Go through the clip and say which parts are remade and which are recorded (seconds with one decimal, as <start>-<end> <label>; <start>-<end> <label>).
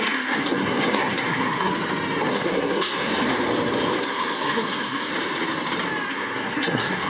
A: 0.0-1.7 remade; 1.7-2.3 recorded; 2.3-3.1 remade; 3.1-4.0 recorded; 4.0-5.1 remade; 5.1-6.1 recorded; 6.1-7.1 remade